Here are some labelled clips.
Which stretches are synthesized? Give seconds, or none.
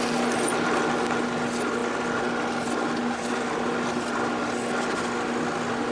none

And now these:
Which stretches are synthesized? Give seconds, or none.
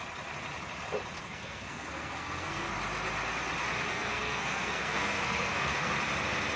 1.2-2.7 (codec, SNAC); 3.9-5.9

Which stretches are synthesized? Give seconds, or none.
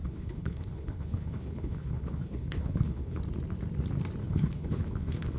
0.0-3.2 (codec, HILCodec); 4.2-5.4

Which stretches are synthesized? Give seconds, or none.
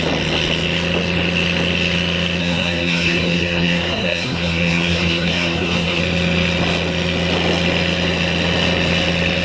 2.4-6.0 (codec, SNAC)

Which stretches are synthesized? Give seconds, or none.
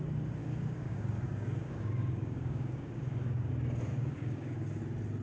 0.4-3.5 (codec, DAC); 3.9-4.8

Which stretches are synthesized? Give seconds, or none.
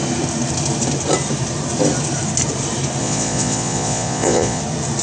3.0-4.6 (vocoder, Vocos)